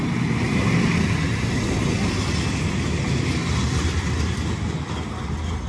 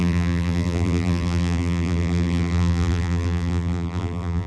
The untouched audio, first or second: first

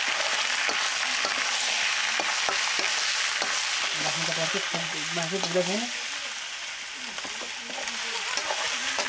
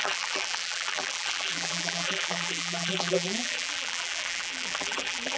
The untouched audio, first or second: first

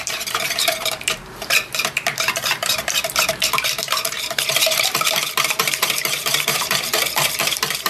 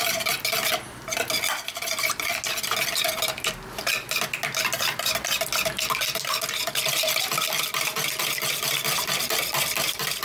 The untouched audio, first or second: second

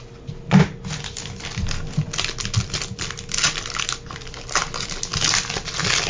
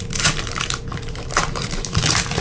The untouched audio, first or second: first